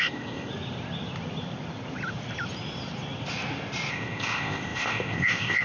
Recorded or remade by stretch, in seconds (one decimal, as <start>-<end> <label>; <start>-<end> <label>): 0.0-0.5 remade; 0.5-3.9 recorded; 3.9-5.6 remade